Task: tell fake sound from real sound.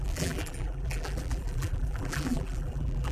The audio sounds fake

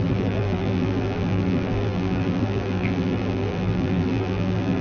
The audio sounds fake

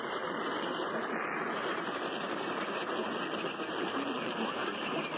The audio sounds fake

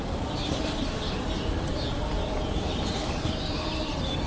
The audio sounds fake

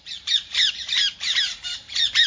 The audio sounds fake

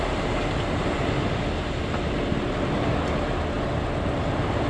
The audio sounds real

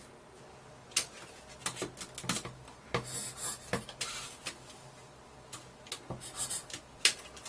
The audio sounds real